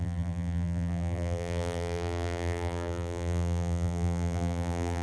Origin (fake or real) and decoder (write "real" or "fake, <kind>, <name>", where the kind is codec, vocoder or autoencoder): fake, vocoder, BigVGAN v2